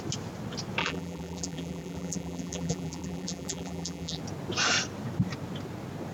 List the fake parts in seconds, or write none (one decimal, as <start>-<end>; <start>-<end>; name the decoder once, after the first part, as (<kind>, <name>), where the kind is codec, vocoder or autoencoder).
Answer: 0.8-4.2 (vocoder, BigVGAN v2)